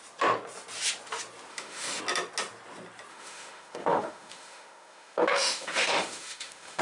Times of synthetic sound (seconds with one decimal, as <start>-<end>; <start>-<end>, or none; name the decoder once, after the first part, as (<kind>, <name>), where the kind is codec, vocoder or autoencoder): 1.5-2.0 (autoencoder, DAC-VAE); 3.1-6.8